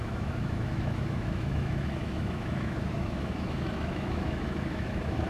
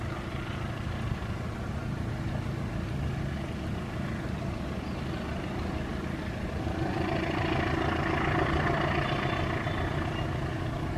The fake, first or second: first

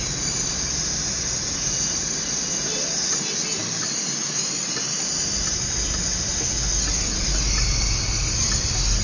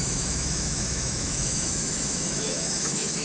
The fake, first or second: second